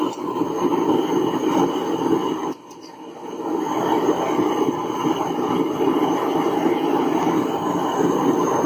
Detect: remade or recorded recorded